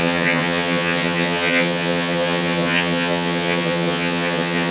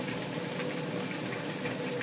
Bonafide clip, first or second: second